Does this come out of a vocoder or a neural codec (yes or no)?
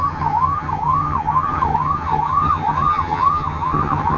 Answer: yes